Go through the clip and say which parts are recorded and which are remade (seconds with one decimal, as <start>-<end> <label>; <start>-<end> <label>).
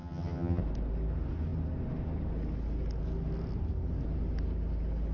0.0-0.6 remade; 0.6-5.1 recorded